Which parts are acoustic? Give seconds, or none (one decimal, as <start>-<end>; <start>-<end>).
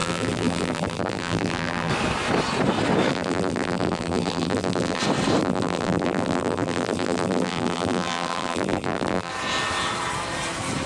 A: 1.9-3.1; 5.0-5.4; 9.3-10.9